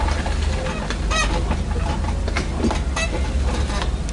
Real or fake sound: real